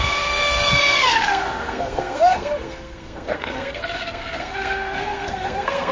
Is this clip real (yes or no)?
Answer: no